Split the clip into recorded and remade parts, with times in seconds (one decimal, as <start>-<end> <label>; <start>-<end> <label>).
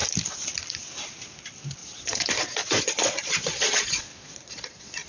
0.0-1.8 recorded; 1.8-5.1 remade